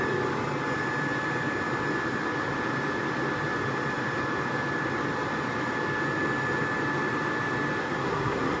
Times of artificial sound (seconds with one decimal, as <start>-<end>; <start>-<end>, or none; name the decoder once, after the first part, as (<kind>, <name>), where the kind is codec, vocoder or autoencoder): 7.8-8.6 (codec, SNAC)

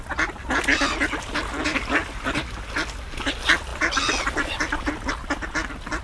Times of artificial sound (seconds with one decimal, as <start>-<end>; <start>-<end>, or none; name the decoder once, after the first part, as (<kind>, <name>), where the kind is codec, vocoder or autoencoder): none

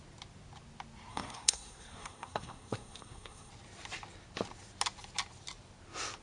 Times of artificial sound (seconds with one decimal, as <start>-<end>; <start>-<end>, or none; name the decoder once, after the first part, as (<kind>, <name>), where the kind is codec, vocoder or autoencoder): 1.1-3.5 (codec, SNAC)